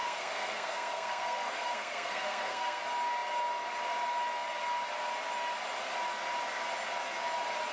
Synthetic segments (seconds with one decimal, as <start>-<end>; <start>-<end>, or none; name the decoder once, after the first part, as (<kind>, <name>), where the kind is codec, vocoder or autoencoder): 0.0-2.8 (codec, SNAC)